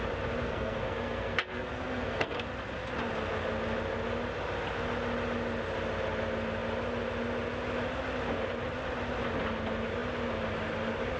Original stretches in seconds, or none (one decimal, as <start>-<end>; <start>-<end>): 0.0-0.4; 2.5-11.2

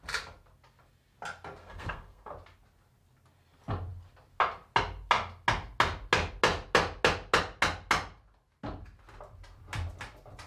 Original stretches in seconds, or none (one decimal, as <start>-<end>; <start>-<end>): 0.0-1.6; 2.3-10.5

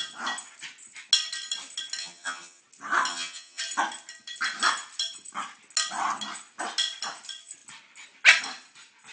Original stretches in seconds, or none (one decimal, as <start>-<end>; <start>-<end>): 0.0-2.0; 2.6-3.1; 3.6-9.1

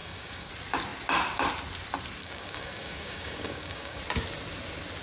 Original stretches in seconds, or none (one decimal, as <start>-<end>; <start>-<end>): 0.5-2.2; 4.0-5.0

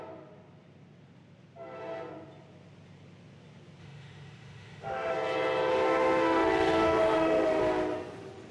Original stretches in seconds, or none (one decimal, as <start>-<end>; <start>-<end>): 0.0-3.8; 5.1-5.7; 7.6-8.5

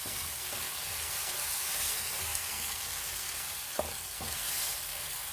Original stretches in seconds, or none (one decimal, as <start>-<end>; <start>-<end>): none